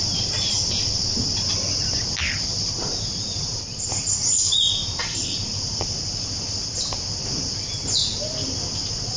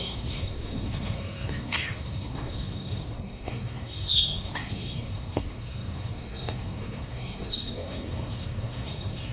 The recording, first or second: first